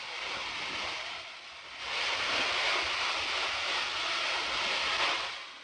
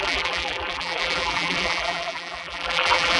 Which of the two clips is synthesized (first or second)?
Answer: second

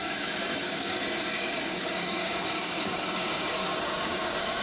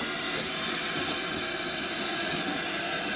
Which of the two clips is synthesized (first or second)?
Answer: first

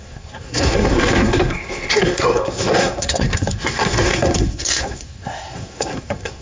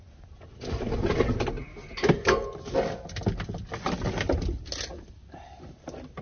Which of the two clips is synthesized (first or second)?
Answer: first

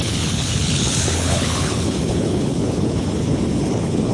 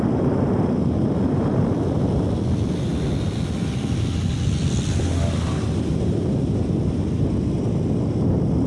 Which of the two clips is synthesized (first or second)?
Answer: first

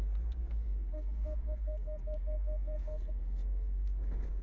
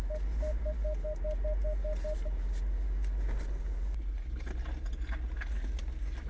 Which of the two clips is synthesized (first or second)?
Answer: first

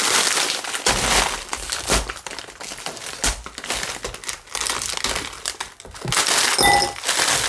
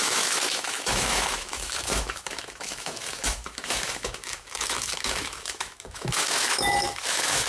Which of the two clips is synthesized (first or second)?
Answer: second